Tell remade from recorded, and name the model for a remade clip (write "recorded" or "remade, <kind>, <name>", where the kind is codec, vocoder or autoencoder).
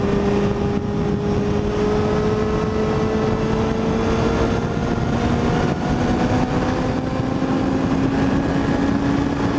recorded